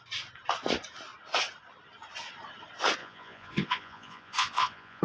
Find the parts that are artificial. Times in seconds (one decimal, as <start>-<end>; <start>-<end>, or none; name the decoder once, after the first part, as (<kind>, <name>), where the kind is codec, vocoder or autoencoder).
3.0-5.0 (vocoder, Vocos)

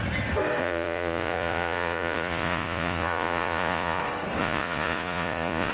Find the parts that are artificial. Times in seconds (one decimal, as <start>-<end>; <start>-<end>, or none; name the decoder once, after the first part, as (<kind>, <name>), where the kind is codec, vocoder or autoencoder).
0.6-4.0 (vocoder, Vocos); 4.4-5.7

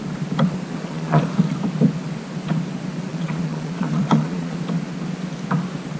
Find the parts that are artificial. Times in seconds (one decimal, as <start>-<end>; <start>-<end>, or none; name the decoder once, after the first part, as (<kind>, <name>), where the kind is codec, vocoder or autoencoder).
0.7-1.2 (vocoder, Vocos); 3.1-4.6